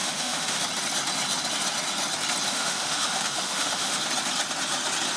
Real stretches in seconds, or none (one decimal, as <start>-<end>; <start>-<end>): 0.6-2.5; 4.0-5.2